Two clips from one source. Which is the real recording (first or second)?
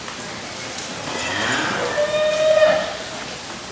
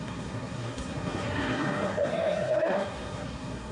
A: first